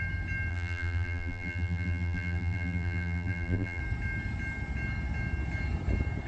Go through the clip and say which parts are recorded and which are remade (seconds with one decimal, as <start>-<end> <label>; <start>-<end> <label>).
0.0-0.5 recorded; 0.5-3.8 remade; 3.8-6.3 recorded